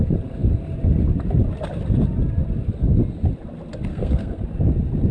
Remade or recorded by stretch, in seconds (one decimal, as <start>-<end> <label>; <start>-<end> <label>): 0.0-3.9 recorded; 3.9-4.4 remade; 4.4-5.1 recorded